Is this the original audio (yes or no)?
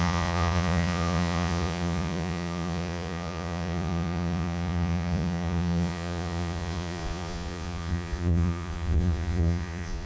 no